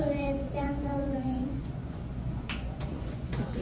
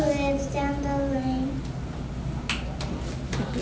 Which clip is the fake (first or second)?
first